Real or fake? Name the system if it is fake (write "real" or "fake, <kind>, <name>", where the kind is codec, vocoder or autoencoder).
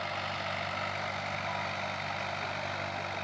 real